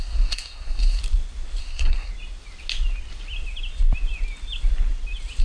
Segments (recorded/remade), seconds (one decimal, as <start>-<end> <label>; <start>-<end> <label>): 0.0-1.0 remade; 1.0-1.6 recorded; 1.6-2.1 remade; 2.1-5.4 recorded